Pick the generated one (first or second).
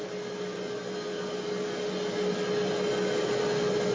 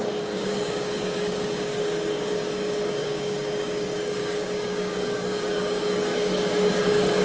second